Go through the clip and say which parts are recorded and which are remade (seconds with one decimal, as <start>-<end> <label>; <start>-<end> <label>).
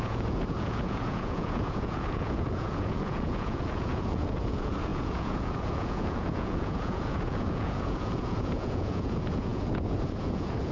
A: 0.0-10.7 remade